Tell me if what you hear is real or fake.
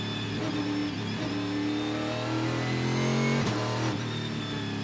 real